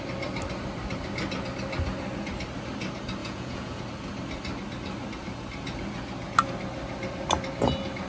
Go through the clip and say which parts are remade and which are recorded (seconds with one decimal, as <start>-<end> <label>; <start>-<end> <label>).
0.0-3.2 recorded; 3.2-3.8 remade; 3.8-8.1 recorded